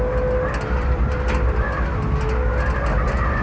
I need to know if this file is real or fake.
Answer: real